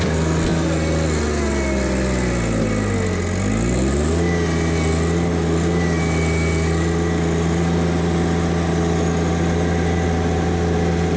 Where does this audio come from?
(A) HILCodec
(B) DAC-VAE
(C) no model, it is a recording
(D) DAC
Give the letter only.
C